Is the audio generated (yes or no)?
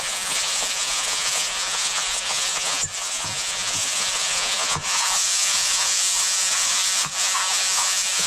yes